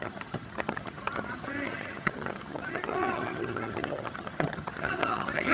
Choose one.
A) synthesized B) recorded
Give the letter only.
A